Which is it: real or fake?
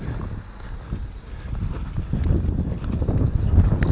real